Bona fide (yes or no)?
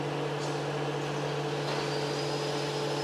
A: yes